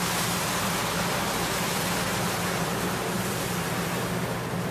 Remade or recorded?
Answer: recorded